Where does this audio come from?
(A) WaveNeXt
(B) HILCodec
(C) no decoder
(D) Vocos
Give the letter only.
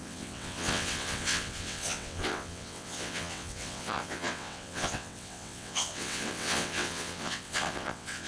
A